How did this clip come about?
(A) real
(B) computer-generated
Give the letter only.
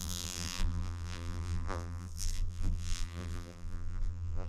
B